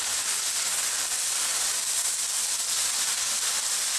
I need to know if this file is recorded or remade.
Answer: recorded